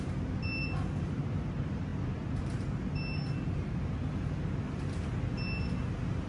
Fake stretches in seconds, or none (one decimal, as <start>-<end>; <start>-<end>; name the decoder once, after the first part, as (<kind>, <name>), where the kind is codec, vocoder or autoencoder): none